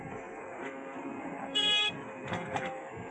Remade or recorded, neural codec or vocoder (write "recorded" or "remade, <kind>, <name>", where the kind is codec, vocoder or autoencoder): remade, codec, SNAC